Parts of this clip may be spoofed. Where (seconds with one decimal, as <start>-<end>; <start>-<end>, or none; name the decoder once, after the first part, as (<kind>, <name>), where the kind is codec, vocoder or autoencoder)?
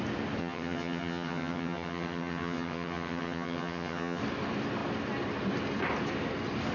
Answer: 0.4-4.2 (vocoder, HiFi-GAN)